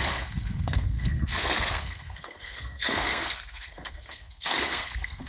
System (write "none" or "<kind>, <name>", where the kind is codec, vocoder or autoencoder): codec, SNAC